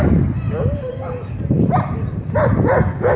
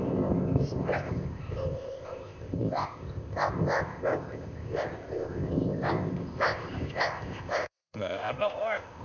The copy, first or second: second